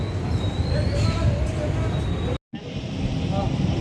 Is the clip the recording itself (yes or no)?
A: yes